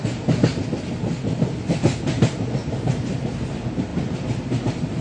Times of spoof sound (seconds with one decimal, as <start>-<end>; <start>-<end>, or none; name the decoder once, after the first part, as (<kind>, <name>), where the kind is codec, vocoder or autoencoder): none